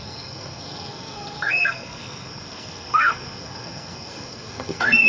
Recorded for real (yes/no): no